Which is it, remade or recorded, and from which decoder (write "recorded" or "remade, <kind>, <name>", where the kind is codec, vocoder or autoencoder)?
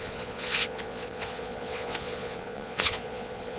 remade, vocoder, Vocos